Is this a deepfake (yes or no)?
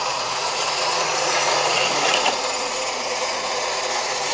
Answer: yes